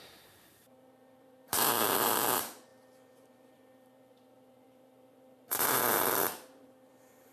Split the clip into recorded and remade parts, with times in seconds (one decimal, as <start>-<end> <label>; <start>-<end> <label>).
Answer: 0.0-7.3 remade